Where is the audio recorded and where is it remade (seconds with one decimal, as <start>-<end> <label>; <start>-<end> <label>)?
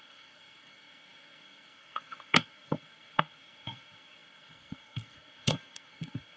0.0-6.4 remade